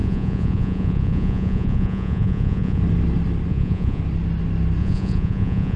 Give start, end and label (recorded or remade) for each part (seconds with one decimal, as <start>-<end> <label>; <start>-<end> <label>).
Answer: 0.0-2.8 remade; 2.8-3.5 recorded; 3.5-4.0 remade; 4.0-4.8 recorded; 4.8-5.8 remade